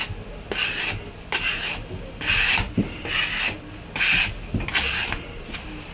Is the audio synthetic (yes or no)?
no